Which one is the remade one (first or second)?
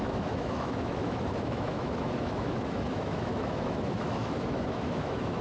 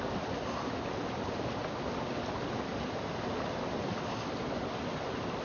first